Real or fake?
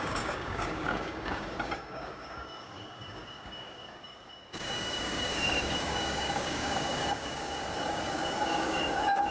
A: fake